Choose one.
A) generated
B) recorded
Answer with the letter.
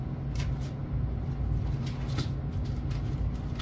B